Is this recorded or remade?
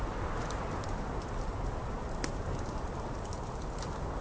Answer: recorded